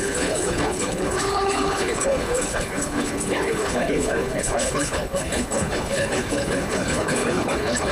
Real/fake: fake